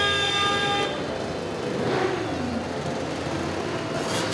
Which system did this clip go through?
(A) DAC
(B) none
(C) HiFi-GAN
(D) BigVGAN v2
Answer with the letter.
B